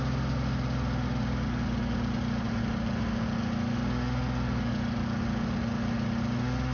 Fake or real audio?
real